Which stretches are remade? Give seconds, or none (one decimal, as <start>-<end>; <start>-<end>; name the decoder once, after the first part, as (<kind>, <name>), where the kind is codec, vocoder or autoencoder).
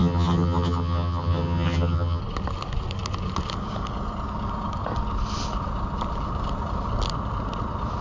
0.0-2.2 (vocoder, HiFi-GAN)